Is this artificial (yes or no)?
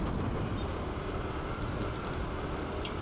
no